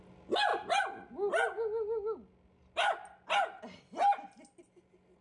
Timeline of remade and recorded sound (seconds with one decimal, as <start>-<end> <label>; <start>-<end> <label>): 0.0-5.2 recorded